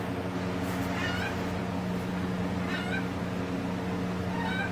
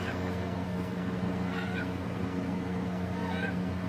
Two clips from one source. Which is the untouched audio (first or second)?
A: first